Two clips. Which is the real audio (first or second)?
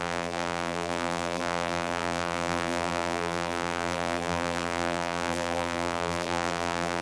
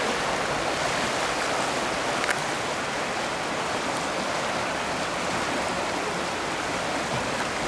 second